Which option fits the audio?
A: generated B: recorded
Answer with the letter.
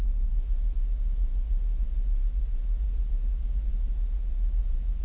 A